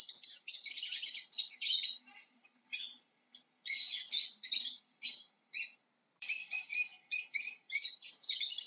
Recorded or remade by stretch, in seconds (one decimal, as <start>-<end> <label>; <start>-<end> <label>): 0.0-2.7 remade; 2.7-4.3 recorded; 4.3-8.7 remade